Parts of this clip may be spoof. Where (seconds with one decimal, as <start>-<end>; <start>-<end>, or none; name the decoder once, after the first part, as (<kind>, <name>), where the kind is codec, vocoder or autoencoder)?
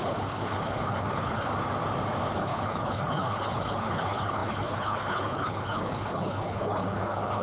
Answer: 0.0-1.5 (codec, HILCodec); 2.3-7.4